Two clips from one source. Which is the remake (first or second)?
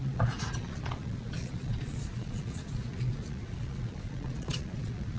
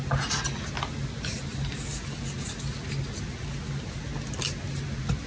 first